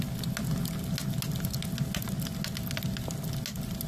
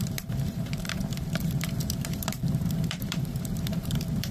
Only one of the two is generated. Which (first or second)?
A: second